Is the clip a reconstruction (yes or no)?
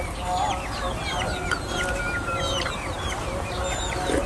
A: no